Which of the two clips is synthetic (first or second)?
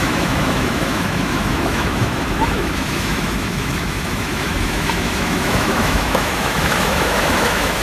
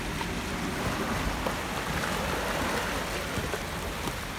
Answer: first